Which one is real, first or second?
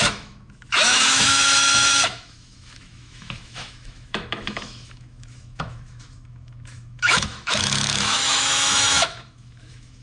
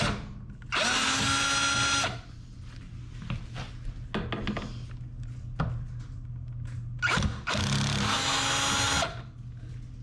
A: second